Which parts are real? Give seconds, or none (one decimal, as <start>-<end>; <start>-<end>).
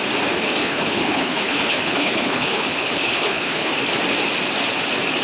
0.0-0.6; 3.7-5.2